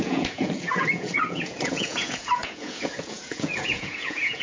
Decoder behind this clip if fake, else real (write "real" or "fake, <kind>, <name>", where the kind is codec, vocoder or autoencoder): fake, vocoder, Vocos